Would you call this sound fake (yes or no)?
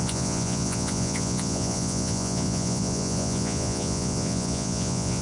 yes